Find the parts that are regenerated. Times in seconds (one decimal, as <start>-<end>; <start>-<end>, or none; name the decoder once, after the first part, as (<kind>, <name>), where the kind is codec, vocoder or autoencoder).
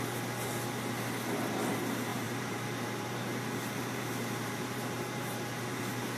2.1-5.8 (vocoder, BigVGAN v2)